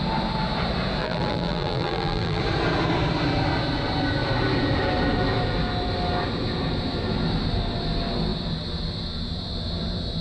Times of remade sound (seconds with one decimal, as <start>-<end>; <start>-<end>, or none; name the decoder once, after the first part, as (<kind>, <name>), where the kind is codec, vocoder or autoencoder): 1.0-2.4 (vocoder, BigVGAN v2)